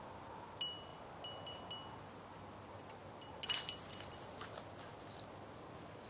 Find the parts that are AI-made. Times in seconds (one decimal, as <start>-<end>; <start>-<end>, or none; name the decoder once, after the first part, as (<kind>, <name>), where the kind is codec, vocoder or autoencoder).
none